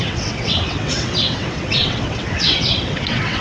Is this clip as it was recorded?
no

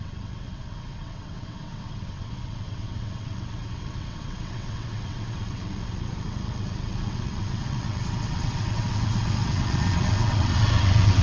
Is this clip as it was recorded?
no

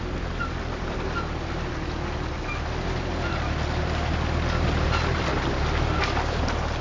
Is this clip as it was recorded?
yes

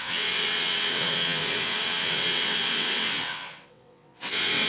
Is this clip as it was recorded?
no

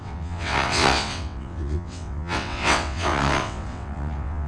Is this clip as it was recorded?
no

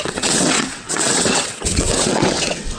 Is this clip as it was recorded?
no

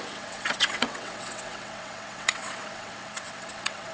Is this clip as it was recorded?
no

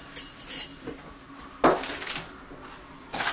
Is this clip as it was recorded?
yes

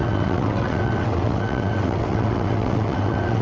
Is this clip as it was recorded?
no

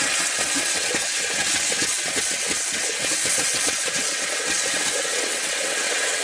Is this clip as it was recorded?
no